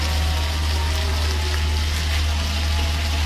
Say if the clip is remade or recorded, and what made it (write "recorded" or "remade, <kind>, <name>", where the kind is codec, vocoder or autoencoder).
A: recorded